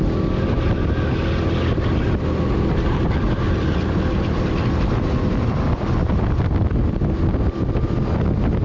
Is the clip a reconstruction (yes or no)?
no